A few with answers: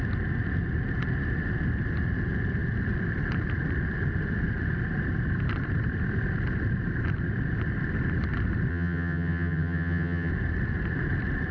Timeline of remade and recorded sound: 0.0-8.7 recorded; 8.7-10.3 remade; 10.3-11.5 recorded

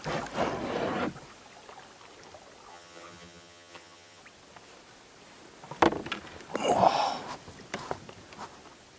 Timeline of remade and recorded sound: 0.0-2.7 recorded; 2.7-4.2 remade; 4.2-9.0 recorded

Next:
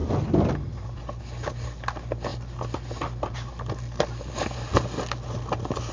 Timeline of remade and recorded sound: 0.0-5.9 recorded